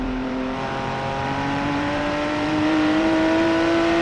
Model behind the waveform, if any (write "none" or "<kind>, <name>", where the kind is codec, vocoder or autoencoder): vocoder, BigVGAN v2